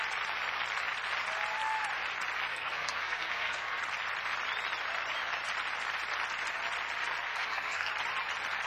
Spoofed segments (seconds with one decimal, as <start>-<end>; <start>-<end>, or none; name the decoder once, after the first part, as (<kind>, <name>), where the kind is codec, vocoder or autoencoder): 2.5-3.8 (codec, SNAC); 7.3-7.9